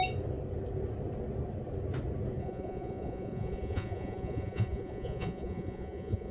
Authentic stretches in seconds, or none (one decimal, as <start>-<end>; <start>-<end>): 0.0-2.4